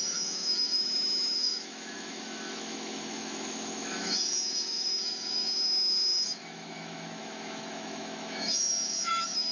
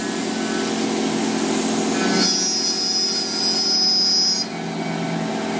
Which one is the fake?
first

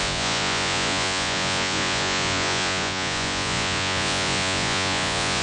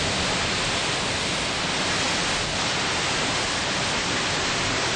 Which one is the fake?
first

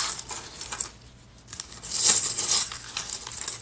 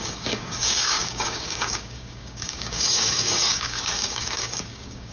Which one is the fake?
second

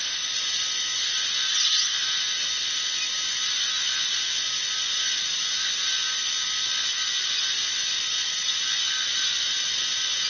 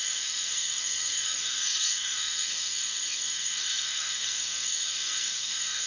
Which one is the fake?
second